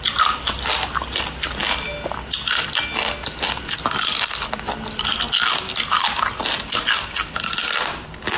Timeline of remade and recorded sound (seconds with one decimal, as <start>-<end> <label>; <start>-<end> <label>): 0.0-8.4 recorded